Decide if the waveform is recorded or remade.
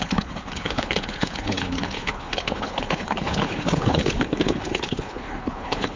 remade